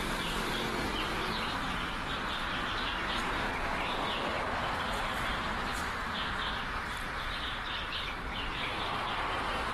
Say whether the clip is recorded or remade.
remade